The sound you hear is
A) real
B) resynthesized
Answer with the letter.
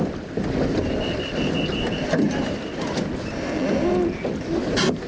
A